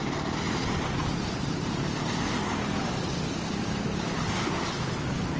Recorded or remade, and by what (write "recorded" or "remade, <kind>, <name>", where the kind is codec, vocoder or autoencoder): recorded